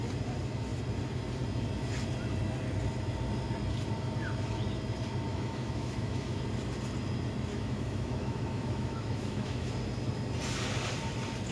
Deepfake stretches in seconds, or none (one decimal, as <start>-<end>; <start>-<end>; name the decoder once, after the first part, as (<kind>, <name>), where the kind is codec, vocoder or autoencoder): 5.3-6.4 (autoencoder, DAC-VAE); 7.5-9.7